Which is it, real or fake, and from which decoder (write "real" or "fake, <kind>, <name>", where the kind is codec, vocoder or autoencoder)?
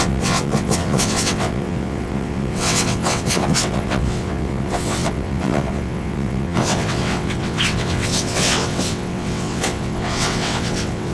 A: fake, vocoder, WaveNeXt